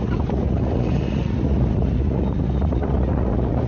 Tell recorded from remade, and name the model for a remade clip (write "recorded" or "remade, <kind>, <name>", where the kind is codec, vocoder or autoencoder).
remade, vocoder, Vocos